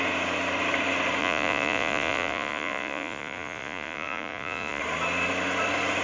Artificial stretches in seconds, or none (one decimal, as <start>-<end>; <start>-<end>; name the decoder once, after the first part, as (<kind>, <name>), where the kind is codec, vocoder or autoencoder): 1.2-4.8 (vocoder, Vocos)